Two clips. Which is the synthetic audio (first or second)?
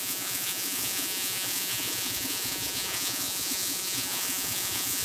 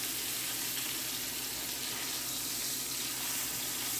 first